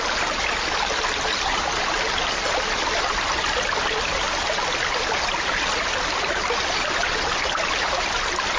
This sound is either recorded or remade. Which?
recorded